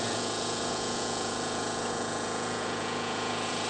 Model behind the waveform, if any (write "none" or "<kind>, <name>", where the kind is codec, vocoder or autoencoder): vocoder, Vocos